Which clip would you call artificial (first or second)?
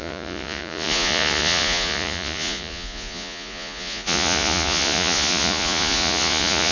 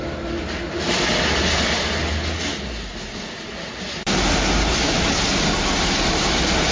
first